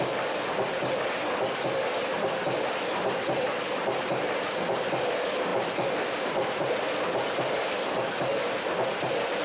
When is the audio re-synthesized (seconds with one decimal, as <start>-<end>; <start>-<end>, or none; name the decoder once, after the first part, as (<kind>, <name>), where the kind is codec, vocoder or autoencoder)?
5.5-6.7 (vocoder, BigVGAN v2)